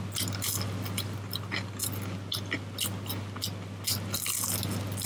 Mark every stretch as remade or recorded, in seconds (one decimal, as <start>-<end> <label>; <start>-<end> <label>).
0.0-5.1 recorded